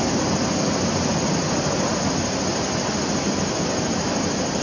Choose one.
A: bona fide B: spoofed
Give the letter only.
A